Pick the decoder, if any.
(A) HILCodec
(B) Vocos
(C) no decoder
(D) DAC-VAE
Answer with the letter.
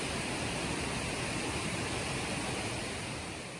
C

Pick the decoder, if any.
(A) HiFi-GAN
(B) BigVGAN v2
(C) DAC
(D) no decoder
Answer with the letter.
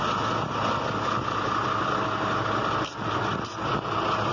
D